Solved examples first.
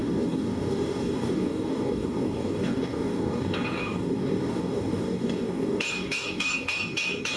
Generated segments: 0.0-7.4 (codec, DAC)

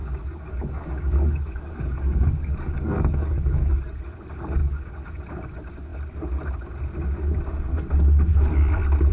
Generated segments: 0.0-3.8 (codec, DAC); 4.6-5.2